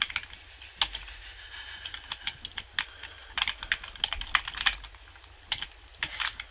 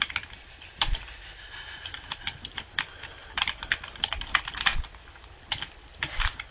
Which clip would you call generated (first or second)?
second